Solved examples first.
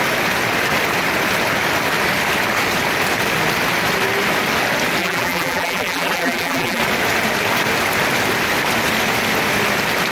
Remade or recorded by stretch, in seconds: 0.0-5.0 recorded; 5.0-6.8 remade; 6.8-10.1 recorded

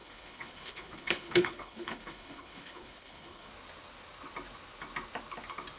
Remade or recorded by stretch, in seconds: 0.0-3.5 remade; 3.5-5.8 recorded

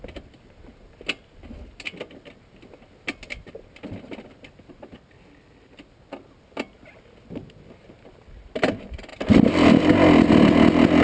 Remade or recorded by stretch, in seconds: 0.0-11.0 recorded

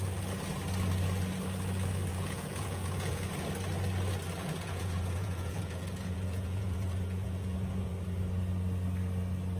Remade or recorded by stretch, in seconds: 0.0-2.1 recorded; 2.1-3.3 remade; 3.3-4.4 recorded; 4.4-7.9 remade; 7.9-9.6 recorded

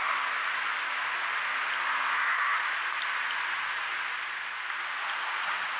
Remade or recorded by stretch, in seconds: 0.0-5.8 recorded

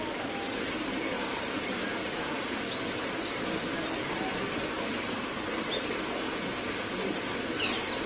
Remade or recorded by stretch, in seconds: 0.0-2.0 recorded; 2.0-2.6 remade; 2.6-8.1 recorded

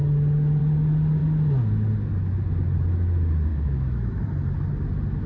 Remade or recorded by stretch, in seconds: 0.0-3.5 recorded; 3.5-4.2 remade; 4.2-5.3 recorded

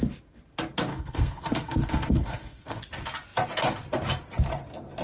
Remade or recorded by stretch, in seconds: 0.0-0.9 recorded; 0.9-2.8 remade; 2.8-5.0 recorded